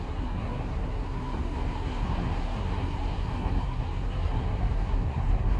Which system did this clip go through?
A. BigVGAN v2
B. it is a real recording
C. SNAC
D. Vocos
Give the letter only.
C